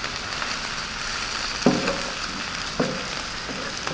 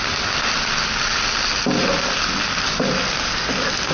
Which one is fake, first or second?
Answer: first